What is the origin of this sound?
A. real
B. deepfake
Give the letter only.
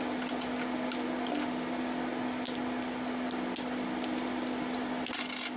A